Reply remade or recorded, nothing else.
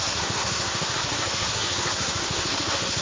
remade